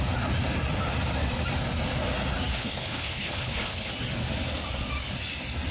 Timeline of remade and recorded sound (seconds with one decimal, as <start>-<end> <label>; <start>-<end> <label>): 0.0-2.5 recorded; 2.5-3.9 remade; 3.9-5.7 recorded